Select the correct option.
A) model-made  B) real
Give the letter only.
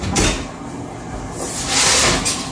B